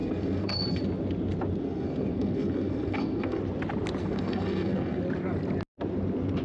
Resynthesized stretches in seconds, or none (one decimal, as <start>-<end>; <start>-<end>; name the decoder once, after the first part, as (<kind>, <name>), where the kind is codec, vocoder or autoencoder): 0.0-0.8 (codec, SNAC); 1.6-3.4; 4.0-5.0